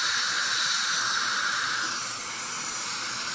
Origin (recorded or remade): remade